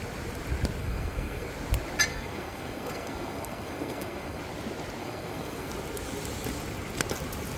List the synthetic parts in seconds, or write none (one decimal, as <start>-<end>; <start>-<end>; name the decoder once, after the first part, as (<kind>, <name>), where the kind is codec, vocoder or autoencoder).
0.8-1.5 (codec, SNAC); 2.1-4.4; 5.0-5.7